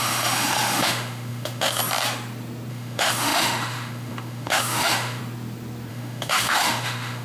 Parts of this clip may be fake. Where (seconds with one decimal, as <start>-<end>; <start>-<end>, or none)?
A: 0.0-1.8; 2.7-5.2; 5.9-7.2